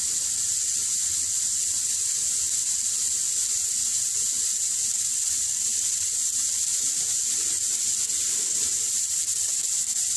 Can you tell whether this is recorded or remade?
recorded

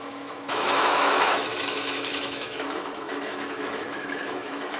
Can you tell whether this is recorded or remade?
remade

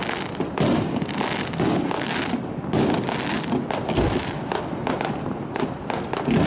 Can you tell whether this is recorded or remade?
recorded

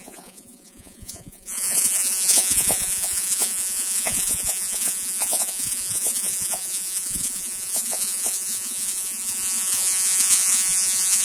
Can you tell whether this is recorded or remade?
remade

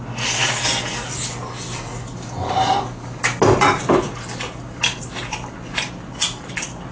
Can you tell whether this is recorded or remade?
recorded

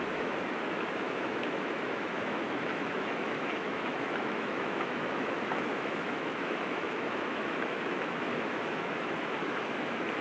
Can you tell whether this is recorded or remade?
remade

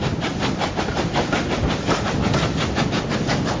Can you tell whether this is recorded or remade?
recorded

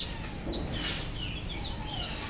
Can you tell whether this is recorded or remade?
recorded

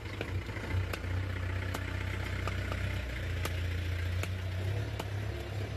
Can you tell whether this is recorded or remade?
recorded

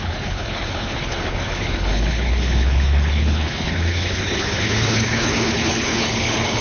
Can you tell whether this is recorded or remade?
remade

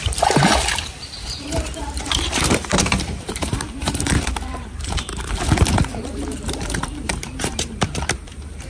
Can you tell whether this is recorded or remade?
remade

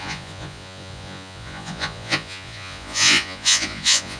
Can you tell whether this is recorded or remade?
remade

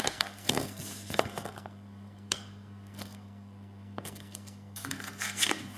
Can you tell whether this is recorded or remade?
remade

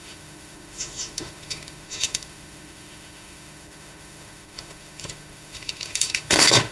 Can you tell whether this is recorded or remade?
remade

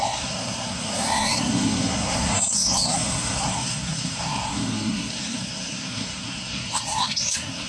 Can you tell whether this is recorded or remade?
remade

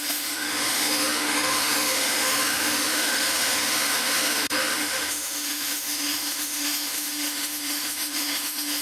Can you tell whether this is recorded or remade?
remade